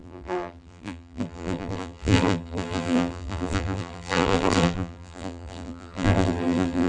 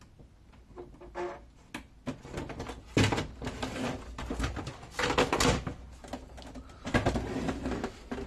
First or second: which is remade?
first